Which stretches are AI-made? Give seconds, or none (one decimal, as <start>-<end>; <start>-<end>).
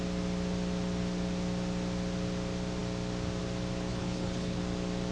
3.9-4.6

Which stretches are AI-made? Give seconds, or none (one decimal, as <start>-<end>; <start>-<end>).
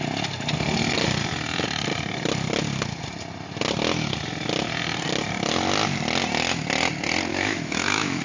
7.3-8.2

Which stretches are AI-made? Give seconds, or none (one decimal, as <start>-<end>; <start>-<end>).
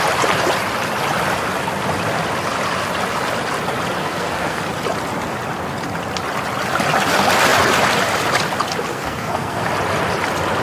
4.0-4.6; 8.9-9.7